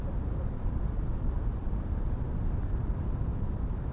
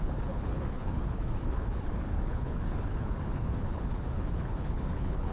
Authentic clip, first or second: first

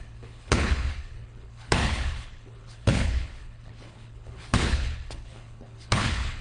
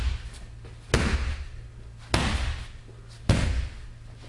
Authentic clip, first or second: second